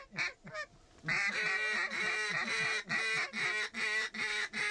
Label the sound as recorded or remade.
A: recorded